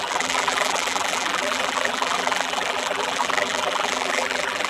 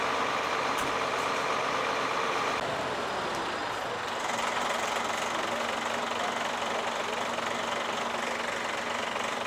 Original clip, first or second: second